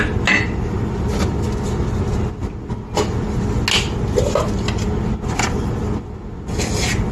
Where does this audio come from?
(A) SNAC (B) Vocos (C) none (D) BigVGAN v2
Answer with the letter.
C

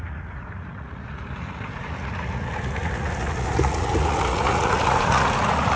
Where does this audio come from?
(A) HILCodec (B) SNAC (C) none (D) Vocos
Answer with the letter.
D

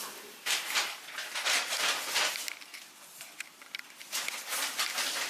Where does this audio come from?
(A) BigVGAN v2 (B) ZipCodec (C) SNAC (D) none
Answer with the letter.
D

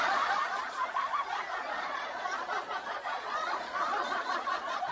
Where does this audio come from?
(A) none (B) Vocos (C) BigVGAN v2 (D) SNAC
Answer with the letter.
B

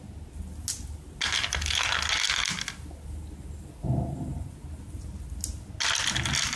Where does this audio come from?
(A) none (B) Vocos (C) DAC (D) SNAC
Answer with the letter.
A